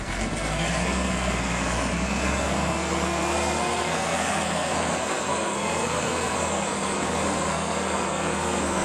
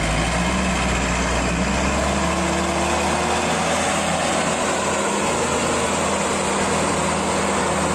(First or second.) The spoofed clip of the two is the first